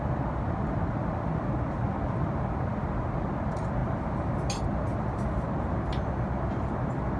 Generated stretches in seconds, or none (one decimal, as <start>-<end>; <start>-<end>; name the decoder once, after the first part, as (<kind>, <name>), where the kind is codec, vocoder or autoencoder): none